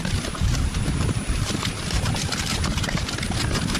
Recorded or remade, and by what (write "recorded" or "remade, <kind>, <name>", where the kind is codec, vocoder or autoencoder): remade, vocoder, BigVGAN v2